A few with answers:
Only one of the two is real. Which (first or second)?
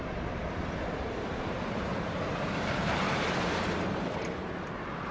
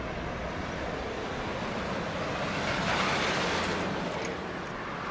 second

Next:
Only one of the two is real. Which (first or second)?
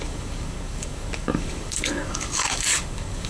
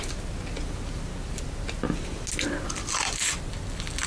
second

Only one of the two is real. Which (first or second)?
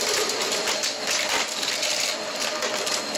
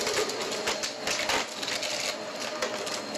second